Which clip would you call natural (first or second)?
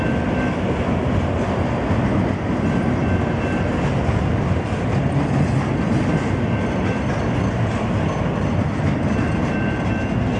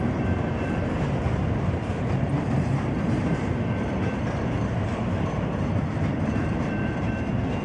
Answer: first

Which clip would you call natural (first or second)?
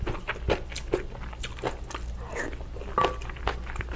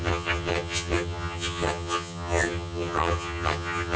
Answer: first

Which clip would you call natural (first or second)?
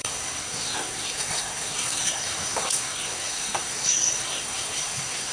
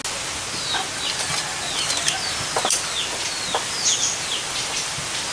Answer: second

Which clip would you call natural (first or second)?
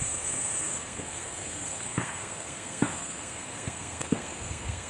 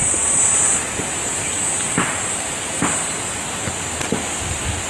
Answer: second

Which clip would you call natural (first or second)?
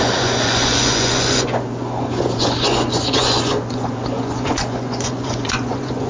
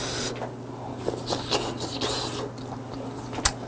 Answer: second